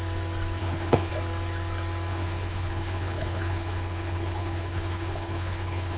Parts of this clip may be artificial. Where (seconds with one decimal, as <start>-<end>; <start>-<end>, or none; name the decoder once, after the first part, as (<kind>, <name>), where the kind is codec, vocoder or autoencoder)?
0.6-1.1 (codec, HILCodec); 2.1-6.0